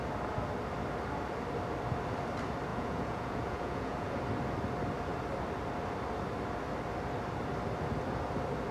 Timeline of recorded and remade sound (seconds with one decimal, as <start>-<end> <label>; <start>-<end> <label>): 0.0-2.7 recorded; 2.7-4.2 remade; 4.2-8.7 recorded